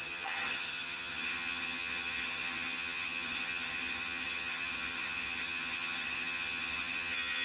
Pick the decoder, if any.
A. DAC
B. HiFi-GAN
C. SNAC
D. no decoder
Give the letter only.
B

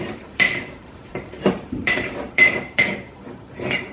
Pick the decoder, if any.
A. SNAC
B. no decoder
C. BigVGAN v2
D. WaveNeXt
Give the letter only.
C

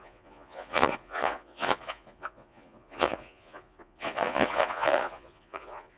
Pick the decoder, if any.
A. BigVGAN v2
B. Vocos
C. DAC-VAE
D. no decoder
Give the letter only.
B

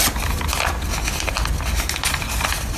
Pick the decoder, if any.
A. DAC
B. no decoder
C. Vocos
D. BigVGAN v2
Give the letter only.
B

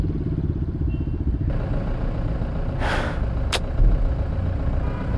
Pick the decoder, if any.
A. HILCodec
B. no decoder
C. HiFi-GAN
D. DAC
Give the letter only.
B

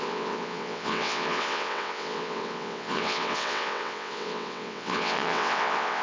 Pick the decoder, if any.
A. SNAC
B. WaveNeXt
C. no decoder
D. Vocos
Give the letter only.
B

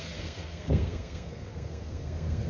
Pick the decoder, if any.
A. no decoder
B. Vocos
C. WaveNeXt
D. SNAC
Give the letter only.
D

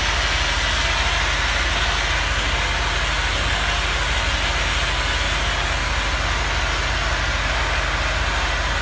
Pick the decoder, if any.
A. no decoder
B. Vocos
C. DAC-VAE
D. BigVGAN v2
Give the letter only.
A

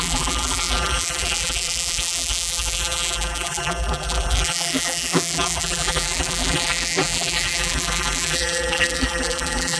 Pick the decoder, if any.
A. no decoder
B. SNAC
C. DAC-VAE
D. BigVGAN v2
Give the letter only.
D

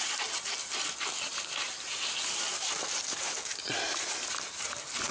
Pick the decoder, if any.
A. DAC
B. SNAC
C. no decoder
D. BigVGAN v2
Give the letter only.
C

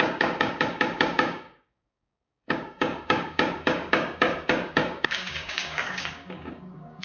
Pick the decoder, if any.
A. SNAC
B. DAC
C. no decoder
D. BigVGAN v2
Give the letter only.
B